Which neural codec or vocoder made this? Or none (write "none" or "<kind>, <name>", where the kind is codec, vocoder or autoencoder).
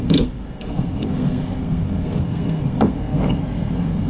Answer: codec, SNAC